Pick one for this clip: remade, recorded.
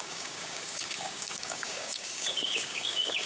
remade